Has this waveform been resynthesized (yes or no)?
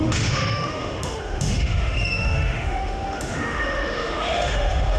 yes